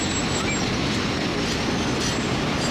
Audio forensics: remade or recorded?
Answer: recorded